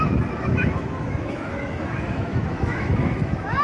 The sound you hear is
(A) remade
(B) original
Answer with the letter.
A